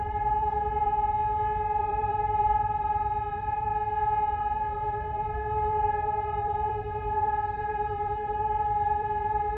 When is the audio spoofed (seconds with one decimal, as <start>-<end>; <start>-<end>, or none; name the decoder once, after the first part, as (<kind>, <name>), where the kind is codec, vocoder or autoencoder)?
0.0-0.9 (vocoder, BigVGAN v2); 1.8-3.7; 4.4-9.6